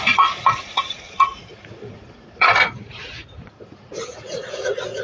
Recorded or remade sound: remade